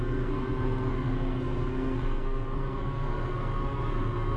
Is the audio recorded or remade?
remade